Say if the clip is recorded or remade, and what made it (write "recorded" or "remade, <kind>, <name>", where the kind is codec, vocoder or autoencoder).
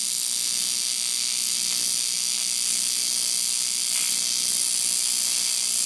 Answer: recorded